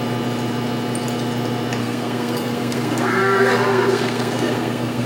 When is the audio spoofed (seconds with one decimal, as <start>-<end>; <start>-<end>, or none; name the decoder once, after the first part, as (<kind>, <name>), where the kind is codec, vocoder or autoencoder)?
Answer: 1.8-5.1 (codec, SNAC)